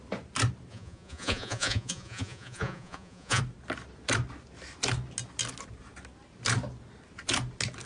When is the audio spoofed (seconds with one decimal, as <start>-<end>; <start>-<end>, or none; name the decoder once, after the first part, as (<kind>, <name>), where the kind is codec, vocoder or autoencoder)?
0.7-3.4 (vocoder, Vocos)